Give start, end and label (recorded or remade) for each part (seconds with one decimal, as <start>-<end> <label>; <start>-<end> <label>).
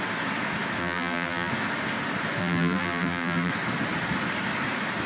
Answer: 0.0-0.8 recorded; 0.8-1.5 remade; 1.5-2.4 recorded; 2.4-3.5 remade; 3.5-5.1 recorded